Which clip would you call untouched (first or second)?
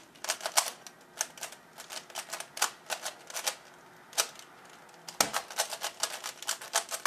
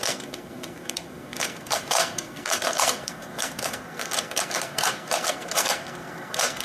first